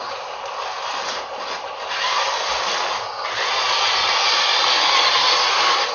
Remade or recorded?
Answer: recorded